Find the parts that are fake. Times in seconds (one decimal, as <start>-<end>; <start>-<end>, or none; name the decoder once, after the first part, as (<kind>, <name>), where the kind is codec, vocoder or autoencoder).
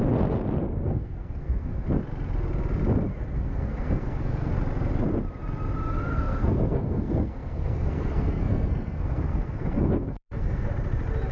0.6-1.9 (codec, SNAC); 3.1-4.5; 6.1-10.7